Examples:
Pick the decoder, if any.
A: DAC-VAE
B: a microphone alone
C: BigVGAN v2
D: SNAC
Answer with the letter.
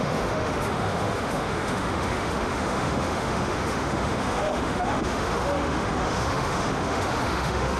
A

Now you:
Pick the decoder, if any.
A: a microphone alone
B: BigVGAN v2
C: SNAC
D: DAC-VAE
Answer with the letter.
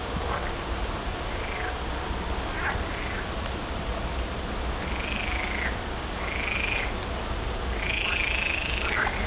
A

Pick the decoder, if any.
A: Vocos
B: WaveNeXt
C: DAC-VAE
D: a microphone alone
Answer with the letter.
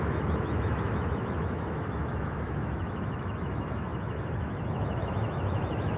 C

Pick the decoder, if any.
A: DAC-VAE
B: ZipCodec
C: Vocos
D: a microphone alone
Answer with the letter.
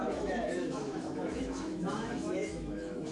A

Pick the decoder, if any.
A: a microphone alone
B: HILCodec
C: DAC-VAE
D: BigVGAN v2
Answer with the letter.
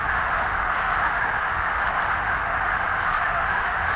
C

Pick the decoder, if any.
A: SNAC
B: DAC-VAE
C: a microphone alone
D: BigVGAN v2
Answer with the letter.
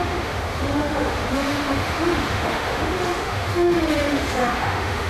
B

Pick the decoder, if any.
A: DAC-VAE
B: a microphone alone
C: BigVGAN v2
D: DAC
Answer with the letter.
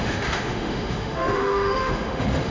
A